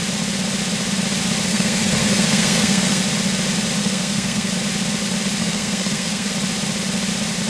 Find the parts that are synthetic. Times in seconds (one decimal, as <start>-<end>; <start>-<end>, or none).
1.5-3.0; 3.8-4.5; 5.4-6.3